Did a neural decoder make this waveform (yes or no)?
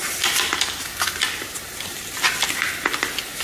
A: no